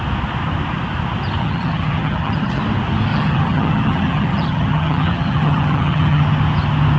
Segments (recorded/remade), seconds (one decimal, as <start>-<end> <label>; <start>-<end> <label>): 0.0-1.4 recorded; 1.4-2.6 remade; 2.6-3.1 recorded; 3.1-6.2 remade; 6.2-7.0 recorded